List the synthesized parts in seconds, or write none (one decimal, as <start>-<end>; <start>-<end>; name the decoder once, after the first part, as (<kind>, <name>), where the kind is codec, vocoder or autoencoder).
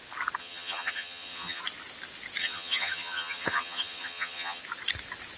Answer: 0.4-1.6 (vocoder, HiFi-GAN); 2.4-4.6